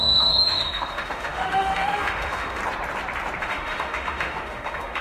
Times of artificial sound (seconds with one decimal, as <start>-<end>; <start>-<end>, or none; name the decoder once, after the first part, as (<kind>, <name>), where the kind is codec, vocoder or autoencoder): 0.0-2.6 (autoencoder, DAC-VAE); 3.4-5.0